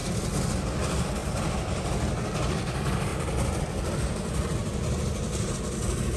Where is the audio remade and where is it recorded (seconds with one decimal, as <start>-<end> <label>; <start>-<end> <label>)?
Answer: 0.0-1.2 recorded; 1.2-1.8 remade; 1.8-6.2 recorded